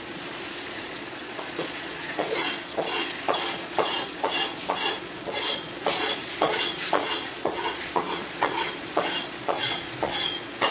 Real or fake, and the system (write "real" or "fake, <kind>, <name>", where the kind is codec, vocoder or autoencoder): fake, vocoder, Vocos